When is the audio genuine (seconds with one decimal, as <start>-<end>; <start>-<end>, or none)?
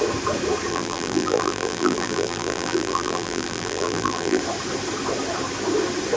0.0-0.7; 4.4-6.2